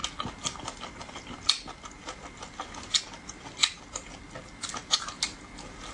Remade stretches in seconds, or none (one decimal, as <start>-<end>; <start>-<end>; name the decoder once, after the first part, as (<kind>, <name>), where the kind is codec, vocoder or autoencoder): none

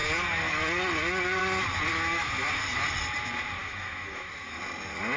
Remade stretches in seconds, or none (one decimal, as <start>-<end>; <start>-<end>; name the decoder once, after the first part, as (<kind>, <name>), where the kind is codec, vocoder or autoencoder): 1.9-2.6 (autoencoder, DAC-VAE); 3.6-4.6

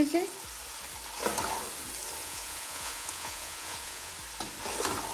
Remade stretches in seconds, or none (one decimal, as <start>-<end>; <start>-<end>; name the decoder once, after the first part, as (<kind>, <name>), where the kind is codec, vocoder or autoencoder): 2.2-4.1 (vocoder, Vocos)

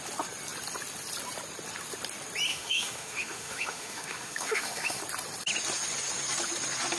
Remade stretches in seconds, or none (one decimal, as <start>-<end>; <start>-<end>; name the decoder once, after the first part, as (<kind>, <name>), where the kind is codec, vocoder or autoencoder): 2.5-5.0 (autoencoder, DAC-VAE)